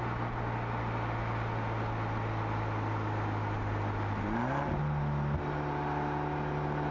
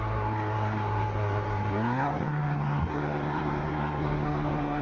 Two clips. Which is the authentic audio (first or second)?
first